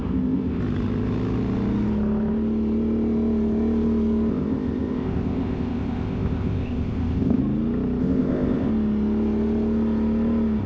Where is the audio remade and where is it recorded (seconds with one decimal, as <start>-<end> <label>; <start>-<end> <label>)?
0.0-0.6 remade; 0.6-4.3 recorded; 4.3-7.4 remade; 7.4-8.0 recorded; 8.0-8.7 remade; 8.7-10.7 recorded